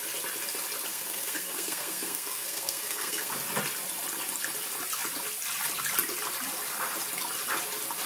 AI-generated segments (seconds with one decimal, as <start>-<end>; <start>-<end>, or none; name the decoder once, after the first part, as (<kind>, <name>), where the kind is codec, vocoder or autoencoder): 0.9-3.3 (codec, SNAC)